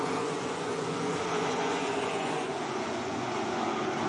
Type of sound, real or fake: fake